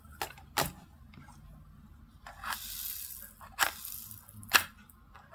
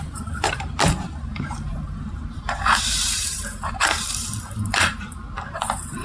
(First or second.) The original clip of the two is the first